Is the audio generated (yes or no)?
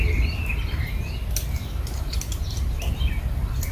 no